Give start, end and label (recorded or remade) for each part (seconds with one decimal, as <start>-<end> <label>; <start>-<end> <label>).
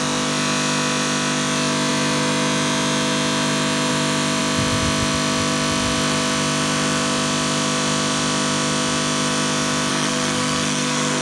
0.0-9.9 recorded; 9.9-11.2 remade